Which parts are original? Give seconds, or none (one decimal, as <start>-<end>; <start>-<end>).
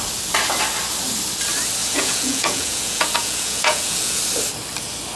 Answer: 0.0-1.8; 4.2-5.2